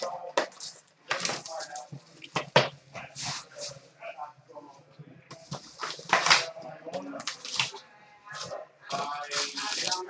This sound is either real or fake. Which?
real